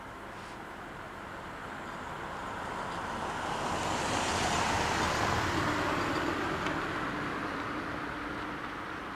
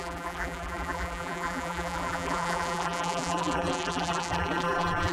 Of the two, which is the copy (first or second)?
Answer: second